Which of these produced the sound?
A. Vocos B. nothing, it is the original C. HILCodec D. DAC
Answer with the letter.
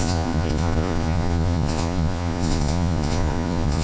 A